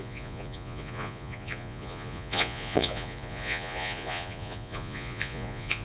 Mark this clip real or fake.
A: fake